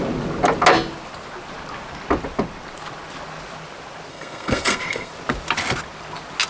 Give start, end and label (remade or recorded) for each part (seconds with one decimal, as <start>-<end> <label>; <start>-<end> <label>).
0.0-4.1 recorded; 4.1-5.1 remade; 5.1-6.5 recorded